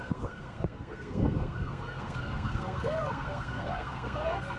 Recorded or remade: remade